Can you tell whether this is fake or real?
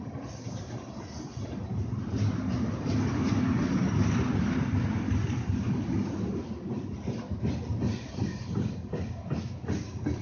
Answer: real